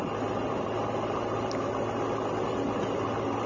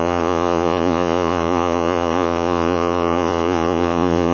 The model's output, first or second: second